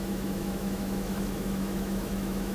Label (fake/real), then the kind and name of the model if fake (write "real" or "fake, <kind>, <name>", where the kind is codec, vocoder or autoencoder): fake, autoencoder, DAC-VAE